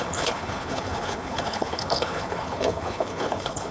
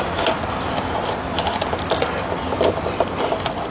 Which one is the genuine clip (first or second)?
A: second